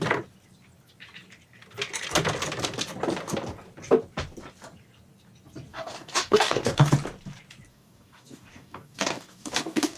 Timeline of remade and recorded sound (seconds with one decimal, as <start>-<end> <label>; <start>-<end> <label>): 0.0-5.7 recorded; 5.7-6.9 remade; 6.9-7.7 recorded; 7.7-10.0 remade